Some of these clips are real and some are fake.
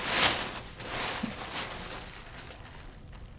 real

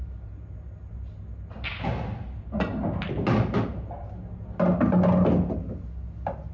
real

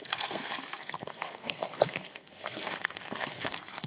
fake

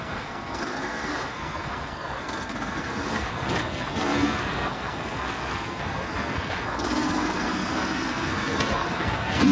fake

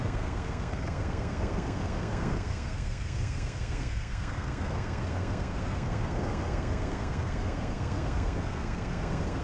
fake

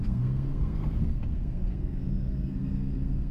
fake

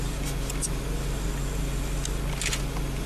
real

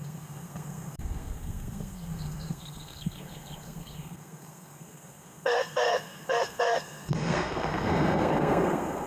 fake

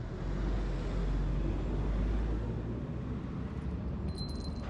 real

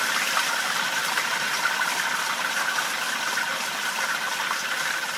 real